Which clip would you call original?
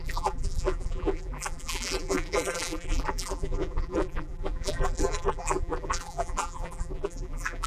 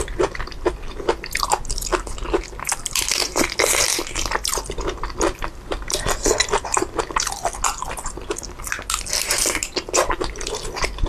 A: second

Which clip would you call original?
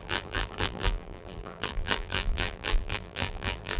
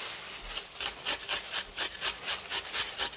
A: second